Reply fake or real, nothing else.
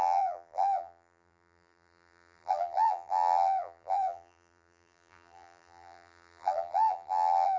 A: fake